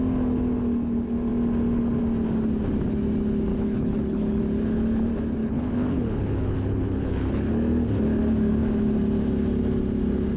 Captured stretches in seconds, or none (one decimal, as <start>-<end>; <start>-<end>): 0.0-3.5; 4.4-5.4; 7.5-10.4